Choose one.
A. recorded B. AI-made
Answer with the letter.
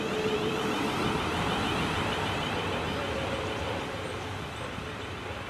B